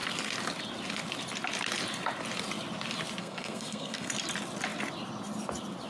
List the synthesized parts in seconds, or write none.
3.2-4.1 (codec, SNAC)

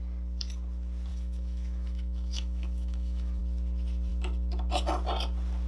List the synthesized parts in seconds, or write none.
1.1-3.4 (autoencoder, DAC-VAE)

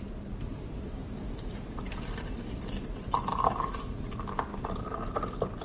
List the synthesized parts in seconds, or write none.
1.0-2.4 (vocoder, BigVGAN v2)

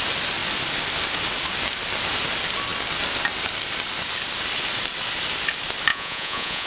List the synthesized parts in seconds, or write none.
5.9-6.7 (vocoder, Vocos)